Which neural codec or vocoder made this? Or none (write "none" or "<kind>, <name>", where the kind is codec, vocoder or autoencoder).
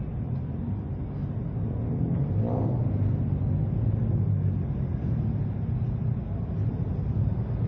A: none